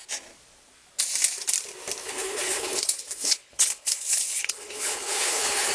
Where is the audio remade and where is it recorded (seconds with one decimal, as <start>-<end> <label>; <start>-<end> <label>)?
0.0-2.0 recorded; 2.0-5.7 remade